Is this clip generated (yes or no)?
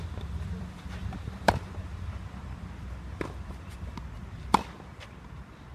yes